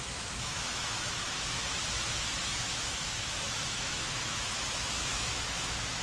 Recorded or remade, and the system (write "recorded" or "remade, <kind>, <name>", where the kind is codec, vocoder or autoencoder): remade, autoencoder, DAC-VAE